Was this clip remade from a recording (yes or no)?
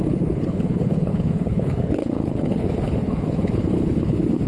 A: yes